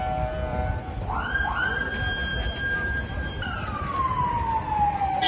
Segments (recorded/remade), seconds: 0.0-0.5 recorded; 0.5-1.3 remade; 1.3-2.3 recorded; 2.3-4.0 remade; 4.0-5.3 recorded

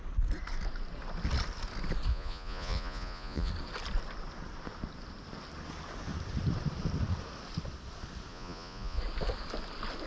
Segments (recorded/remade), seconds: 0.0-2.1 recorded; 2.1-3.5 remade; 3.5-8.3 recorded; 8.3-9.0 remade; 9.0-10.1 recorded

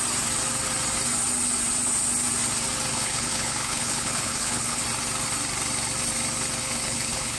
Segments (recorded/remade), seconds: 0.0-2.9 recorded; 2.9-4.8 remade; 4.8-6.6 recorded; 6.6-7.4 remade

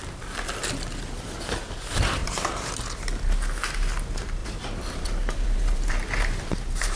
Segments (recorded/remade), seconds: 0.0-4.4 recorded; 4.4-7.0 remade